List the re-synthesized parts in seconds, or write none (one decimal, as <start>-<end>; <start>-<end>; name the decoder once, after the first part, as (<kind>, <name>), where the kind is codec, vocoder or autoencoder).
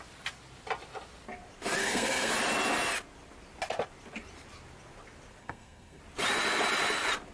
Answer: 1.8-2.3 (codec, SNAC); 5.4-6.0